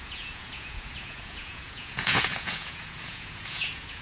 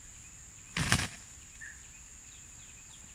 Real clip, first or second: second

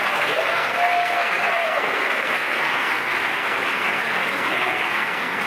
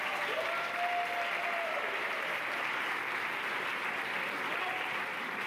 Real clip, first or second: second